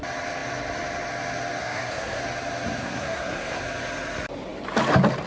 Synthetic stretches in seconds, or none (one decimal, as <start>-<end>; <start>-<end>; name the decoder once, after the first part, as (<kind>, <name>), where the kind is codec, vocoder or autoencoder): 1.6-2.2 (codec, SNAC); 2.8-3.6